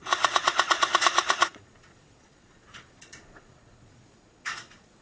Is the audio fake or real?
fake